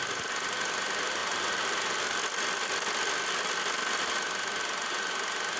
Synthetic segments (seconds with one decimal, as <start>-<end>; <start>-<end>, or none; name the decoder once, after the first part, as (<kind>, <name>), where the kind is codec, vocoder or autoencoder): none